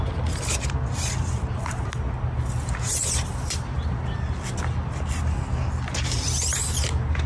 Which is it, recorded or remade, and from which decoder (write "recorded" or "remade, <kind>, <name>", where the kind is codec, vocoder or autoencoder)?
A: recorded